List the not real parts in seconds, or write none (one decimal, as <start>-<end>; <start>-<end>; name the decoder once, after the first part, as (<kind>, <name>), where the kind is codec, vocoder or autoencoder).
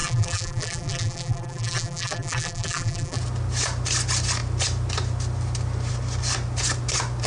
0.0-3.2 (vocoder, BigVGAN v2)